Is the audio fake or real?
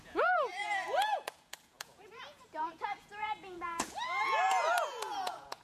fake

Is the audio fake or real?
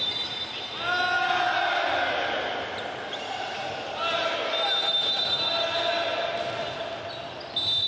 real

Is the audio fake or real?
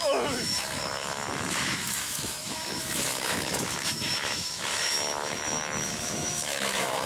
fake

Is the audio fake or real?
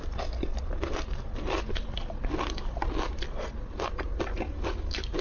real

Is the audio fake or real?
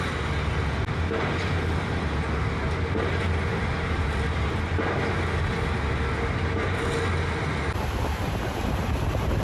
real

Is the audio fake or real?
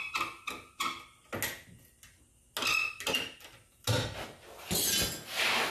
real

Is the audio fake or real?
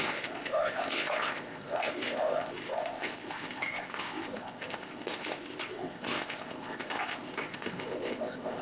fake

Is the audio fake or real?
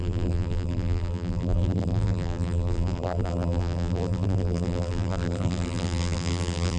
fake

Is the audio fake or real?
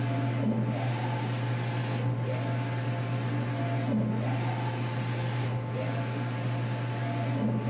real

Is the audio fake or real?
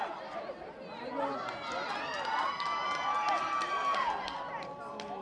real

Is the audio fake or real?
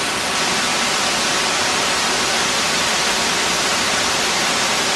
real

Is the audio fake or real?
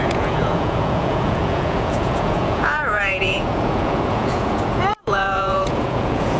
fake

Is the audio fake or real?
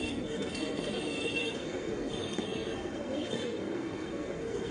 fake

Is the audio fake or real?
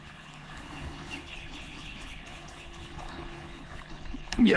fake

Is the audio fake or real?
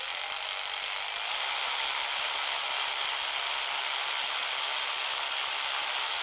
real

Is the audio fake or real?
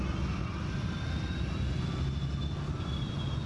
real